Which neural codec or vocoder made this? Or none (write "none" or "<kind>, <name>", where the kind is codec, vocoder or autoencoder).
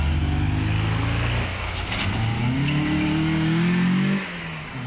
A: none